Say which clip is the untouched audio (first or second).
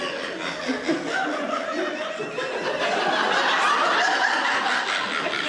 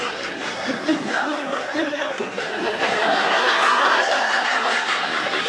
first